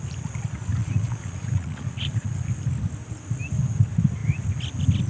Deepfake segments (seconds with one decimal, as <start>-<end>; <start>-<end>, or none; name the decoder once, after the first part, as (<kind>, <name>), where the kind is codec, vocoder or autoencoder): 0.8-2.4 (vocoder, Vocos)